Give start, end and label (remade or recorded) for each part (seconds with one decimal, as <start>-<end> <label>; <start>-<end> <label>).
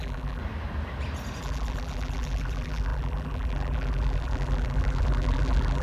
0.0-0.4 remade; 0.4-1.4 recorded; 1.4-5.8 remade